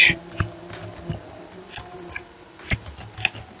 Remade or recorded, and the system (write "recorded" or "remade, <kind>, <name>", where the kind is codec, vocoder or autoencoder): recorded